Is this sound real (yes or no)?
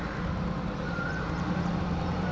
no